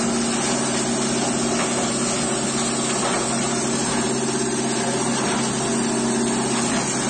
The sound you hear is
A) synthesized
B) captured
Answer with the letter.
B